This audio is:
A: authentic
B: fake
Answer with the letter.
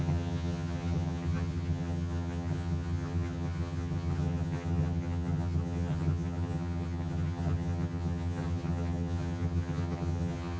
B